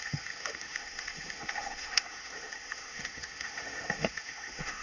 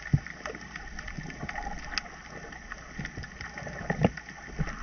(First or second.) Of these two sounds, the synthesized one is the first